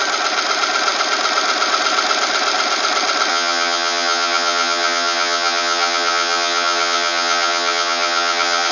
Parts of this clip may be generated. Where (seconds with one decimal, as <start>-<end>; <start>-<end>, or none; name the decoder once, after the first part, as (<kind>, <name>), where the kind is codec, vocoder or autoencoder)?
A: 3.3-8.7 (vocoder, HiFi-GAN)